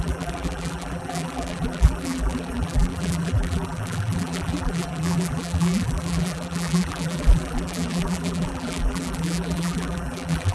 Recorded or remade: remade